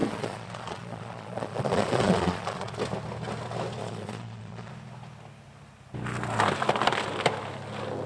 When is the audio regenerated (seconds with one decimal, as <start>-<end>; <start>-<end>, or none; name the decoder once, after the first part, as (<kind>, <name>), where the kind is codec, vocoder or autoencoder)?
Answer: 0.0-2.7 (vocoder, Vocos); 3.8-4.7